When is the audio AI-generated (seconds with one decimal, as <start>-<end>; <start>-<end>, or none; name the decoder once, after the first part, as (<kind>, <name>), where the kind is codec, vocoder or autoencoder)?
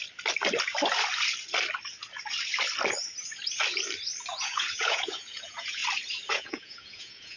4.4-5.8 (vocoder, Vocos); 6.3-7.4